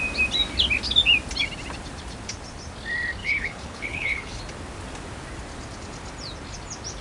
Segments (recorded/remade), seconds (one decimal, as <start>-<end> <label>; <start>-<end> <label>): 0.0-3.2 recorded; 3.2-4.4 remade; 4.4-7.0 recorded

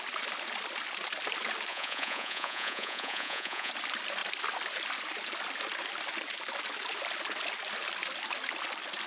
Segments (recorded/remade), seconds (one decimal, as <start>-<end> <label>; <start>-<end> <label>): 0.0-1.7 recorded; 1.7-3.7 remade; 3.7-9.1 recorded

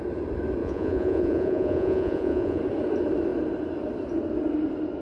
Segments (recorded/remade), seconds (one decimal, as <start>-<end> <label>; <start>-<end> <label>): 0.0-0.6 recorded; 0.6-2.6 remade; 2.6-5.0 recorded